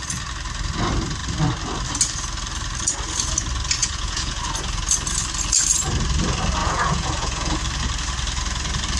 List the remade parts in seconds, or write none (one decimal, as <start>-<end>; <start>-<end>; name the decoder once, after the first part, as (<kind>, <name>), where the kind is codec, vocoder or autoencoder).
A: 3.8-4.4 (vocoder, Vocos); 6.6-7.6